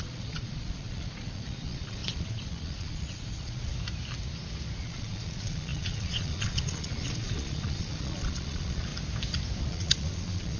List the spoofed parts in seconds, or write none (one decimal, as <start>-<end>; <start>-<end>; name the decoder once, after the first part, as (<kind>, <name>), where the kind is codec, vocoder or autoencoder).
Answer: 0.0-3.7 (vocoder, Vocos); 4.8-8.9; 9.6-10.6